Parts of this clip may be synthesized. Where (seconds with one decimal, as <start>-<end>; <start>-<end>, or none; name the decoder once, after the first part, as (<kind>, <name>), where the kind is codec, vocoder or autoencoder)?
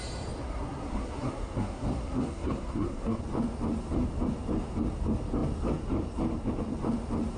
0.4-3.2 (codec, SNAC)